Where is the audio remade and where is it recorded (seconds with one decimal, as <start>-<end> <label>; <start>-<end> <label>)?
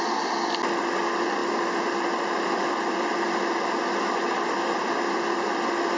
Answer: 0.0-6.0 recorded